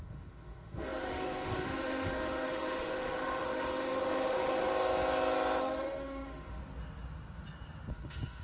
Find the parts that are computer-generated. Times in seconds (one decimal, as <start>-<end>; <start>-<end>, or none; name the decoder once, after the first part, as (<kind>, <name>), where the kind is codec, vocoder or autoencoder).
0.0-4.7 (autoencoder, DAC-VAE); 5.6-6.6; 7.9-8.4